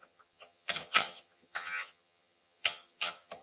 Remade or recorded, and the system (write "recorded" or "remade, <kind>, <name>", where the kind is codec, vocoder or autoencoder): remade, vocoder, HiFi-GAN